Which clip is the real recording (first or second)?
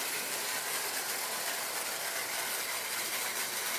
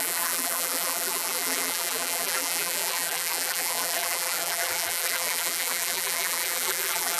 first